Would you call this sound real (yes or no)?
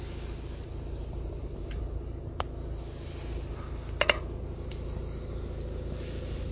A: yes